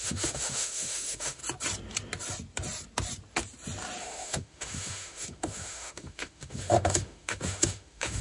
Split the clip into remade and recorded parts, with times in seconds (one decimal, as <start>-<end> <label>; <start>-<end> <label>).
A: 0.0-1.4 remade; 1.4-4.0 recorded; 4.0-8.2 remade